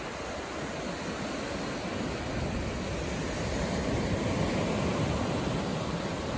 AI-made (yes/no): no